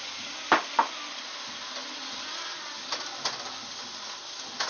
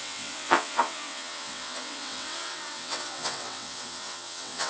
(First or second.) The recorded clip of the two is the first